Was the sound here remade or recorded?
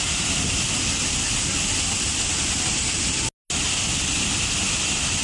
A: recorded